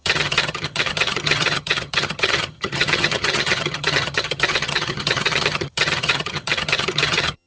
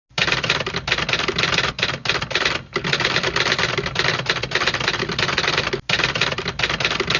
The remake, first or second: first